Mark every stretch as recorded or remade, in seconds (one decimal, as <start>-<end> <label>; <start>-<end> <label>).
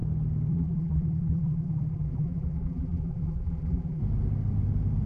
0.0-0.5 recorded; 0.5-4.0 remade; 4.0-5.1 recorded